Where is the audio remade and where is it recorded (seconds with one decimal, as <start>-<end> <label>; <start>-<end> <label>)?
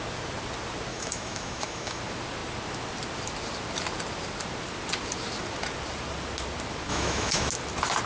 0.0-0.9 recorded; 0.9-2.0 remade; 2.0-6.9 recorded; 6.9-7.5 remade; 7.5-8.1 recorded